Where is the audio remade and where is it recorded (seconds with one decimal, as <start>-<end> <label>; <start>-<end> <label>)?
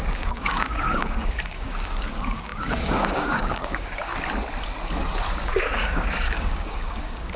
0.0-4.1 remade; 4.1-5.3 recorded; 5.3-7.4 remade